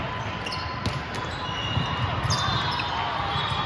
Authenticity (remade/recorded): recorded